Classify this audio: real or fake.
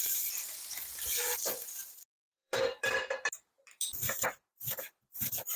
fake